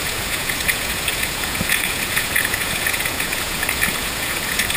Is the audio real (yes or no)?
no